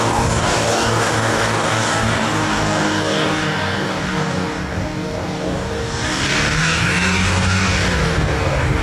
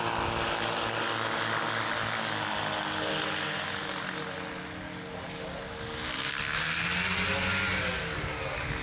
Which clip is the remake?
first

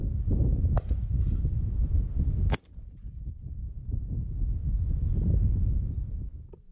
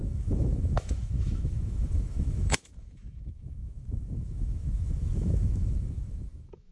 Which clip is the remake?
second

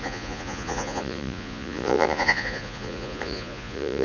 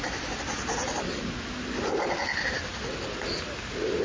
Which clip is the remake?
first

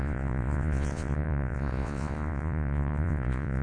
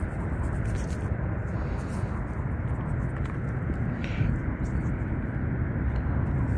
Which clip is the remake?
first